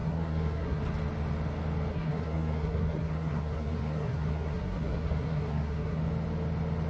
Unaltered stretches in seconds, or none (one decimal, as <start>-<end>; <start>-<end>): 0.8-1.9; 6.0-6.9